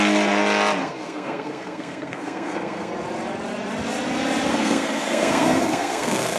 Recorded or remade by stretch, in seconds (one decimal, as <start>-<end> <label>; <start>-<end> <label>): 0.0-0.8 recorded; 0.8-2.9 remade; 2.9-4.5 recorded; 4.5-6.4 remade